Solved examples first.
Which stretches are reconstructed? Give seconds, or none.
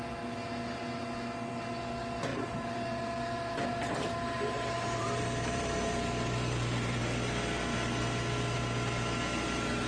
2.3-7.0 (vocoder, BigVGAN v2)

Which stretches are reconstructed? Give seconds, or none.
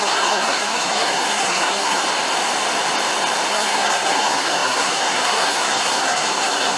0.0-2.0 (codec, SNAC); 3.5-6.8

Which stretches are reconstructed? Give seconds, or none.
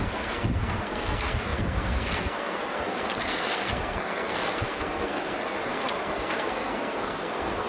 0.0-7.7 (codec, SNAC)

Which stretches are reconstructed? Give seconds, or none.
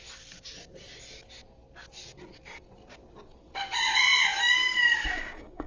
4.6-5.7 (codec, DAC)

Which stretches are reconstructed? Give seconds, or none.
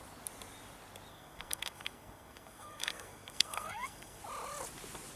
1.1-4.2 (codec, SNAC)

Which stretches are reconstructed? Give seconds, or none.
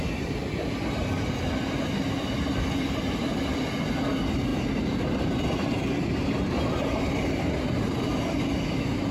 none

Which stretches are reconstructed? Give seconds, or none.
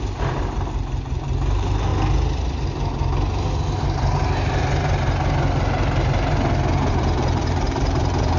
0.0-1.9 (vocoder, BigVGAN v2); 6.9-8.4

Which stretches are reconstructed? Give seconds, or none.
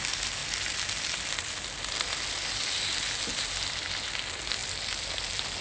none